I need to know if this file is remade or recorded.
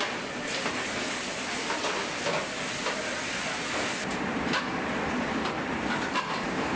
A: recorded